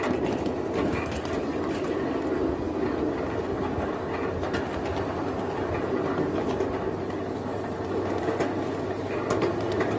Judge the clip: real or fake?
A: real